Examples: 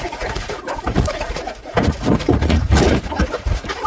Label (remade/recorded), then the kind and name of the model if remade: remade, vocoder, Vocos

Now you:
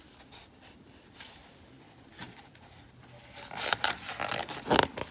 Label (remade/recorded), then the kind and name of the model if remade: recorded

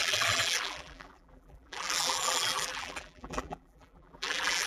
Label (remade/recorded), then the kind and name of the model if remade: remade, vocoder, BigVGAN v2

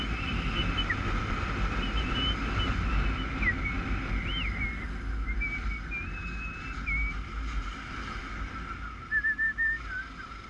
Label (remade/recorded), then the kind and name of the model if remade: recorded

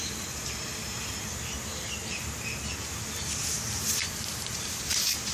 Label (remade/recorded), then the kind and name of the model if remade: remade, vocoder, BigVGAN v2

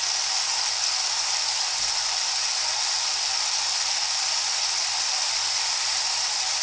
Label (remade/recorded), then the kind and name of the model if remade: recorded